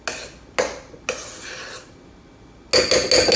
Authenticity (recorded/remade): recorded